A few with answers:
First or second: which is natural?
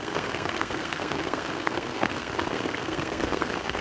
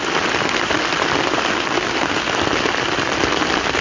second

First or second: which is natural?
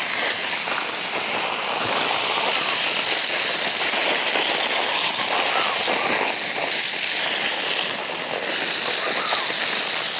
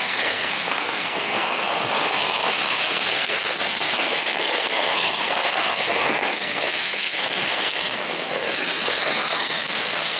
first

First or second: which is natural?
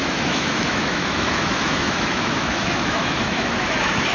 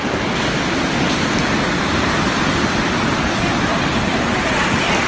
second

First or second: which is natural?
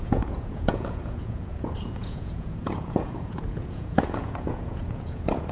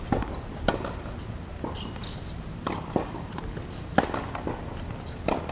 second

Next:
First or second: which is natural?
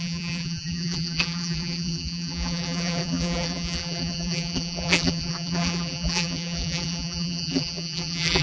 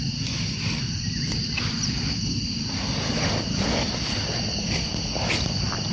second